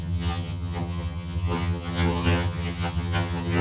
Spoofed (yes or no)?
yes